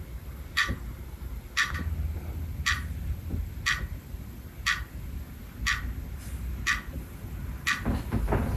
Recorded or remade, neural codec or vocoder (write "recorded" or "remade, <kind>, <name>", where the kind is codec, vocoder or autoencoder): recorded